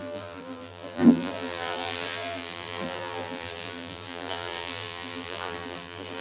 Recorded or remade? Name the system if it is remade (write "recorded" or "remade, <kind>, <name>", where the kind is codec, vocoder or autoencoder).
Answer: remade, vocoder, BigVGAN v2